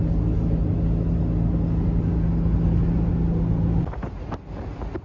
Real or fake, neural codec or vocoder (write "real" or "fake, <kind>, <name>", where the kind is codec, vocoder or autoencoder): real